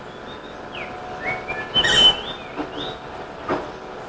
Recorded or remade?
recorded